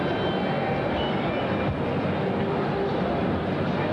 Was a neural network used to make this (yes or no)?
no